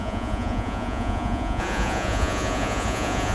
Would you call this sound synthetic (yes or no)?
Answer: yes